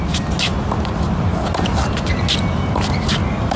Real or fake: real